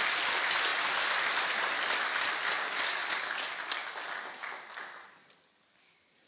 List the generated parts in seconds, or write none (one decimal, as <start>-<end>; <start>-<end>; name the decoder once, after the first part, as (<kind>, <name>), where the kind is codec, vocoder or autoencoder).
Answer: none